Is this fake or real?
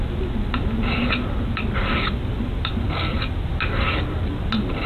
real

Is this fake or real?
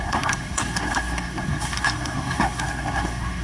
fake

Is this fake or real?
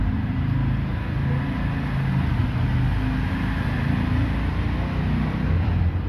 real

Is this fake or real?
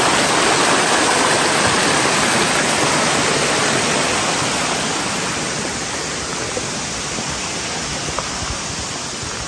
real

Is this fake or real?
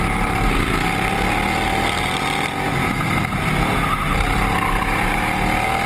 real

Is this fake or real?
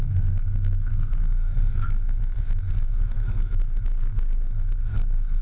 fake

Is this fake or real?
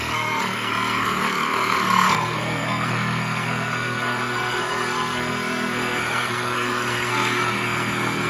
fake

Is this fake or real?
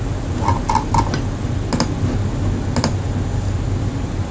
real